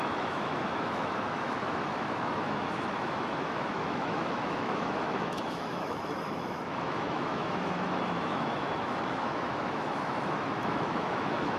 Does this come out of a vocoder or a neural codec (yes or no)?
yes